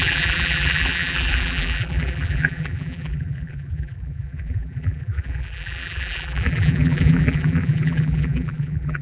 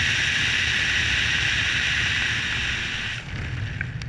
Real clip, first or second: second